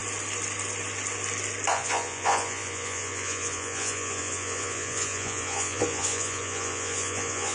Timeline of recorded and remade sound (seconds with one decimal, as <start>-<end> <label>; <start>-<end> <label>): 0.0-1.7 recorded; 1.7-7.5 remade